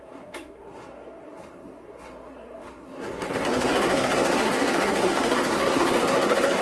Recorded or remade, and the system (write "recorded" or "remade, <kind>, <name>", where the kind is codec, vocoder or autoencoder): remade, codec, SNAC